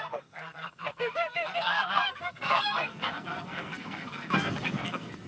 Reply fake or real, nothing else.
fake